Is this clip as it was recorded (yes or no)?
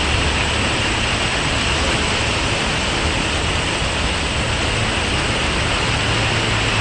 yes